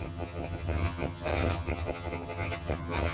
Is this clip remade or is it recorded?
remade